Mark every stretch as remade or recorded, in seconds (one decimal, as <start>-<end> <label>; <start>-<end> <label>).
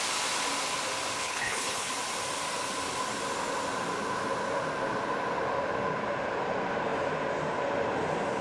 0.0-1.2 recorded; 1.2-1.9 remade; 1.9-8.4 recorded